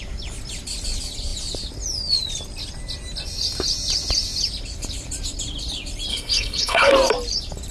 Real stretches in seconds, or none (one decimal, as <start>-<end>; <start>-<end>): 0.0-6.1; 6.9-7.7

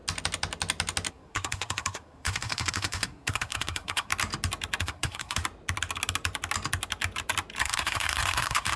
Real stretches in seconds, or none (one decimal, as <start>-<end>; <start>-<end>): 0.0-1.1; 4.1-4.8; 5.4-7.6

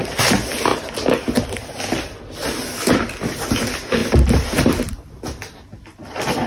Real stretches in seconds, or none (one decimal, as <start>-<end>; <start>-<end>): 0.0-6.5

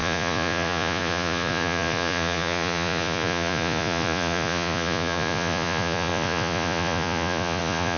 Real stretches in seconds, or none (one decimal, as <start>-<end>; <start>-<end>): none

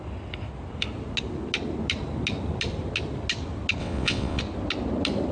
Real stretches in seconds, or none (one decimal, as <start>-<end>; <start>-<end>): 0.0-3.8; 4.4-5.3

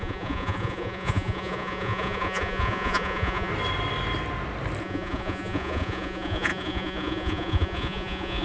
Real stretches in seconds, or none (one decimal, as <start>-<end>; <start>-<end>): 3.5-4.8

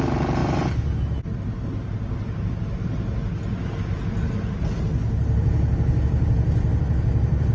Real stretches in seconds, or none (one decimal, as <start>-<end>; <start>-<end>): 0.0-7.5